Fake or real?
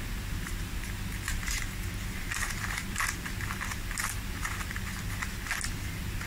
real